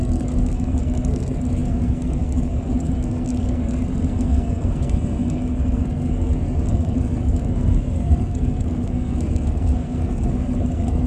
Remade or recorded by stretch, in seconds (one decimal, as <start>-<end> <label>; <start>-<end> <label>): 0.0-11.1 remade